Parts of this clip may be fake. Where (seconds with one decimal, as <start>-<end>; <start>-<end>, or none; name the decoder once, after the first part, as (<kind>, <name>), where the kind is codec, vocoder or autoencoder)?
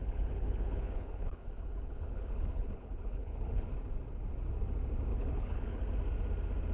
0.0-3.7 (codec, HILCodec); 5.1-5.8